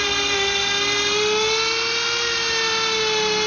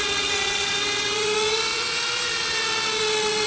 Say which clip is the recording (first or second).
first